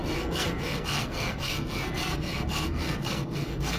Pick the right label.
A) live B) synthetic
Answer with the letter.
B